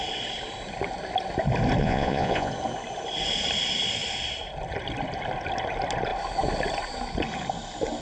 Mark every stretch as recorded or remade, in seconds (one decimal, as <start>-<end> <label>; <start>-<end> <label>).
0.0-1.8 recorded; 1.8-2.5 remade; 2.5-8.0 recorded